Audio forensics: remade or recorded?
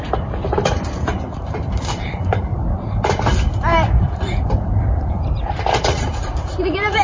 remade